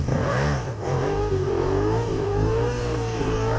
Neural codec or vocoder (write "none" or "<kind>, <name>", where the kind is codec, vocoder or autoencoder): codec, DAC